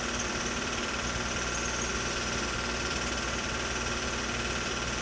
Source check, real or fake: fake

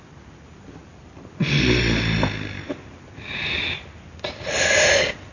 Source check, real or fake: real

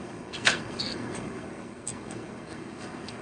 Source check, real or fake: fake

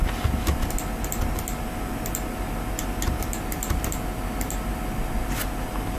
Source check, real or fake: real